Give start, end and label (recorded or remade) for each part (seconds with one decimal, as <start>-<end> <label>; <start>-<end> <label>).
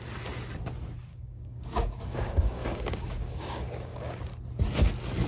0.0-1.1 recorded; 1.1-4.2 remade; 4.2-5.3 recorded